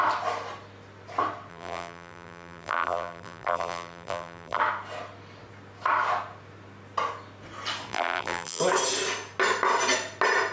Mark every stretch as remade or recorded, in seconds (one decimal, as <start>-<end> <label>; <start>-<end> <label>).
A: 0.0-1.5 recorded; 1.5-4.6 remade; 4.6-7.9 recorded; 7.9-8.6 remade; 8.6-10.5 recorded

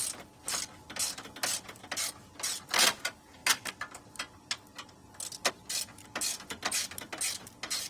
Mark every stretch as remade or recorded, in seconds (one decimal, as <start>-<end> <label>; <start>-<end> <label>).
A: 0.0-3.4 recorded; 3.4-4.2 remade; 4.2-7.9 recorded